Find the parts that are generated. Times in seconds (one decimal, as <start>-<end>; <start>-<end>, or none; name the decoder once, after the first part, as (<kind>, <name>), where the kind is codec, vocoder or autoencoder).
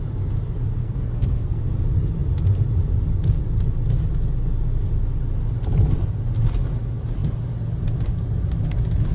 0.8-1.6 (codec, SNAC)